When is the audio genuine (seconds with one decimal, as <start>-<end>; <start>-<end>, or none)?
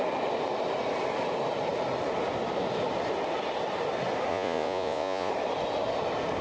0.0-4.3; 5.3-6.4